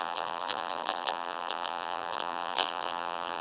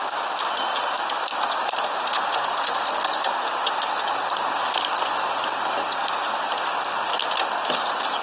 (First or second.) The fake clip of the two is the first